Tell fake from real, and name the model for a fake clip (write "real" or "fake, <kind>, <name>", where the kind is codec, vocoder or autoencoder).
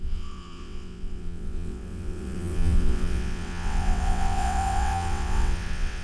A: fake, vocoder, WaveNeXt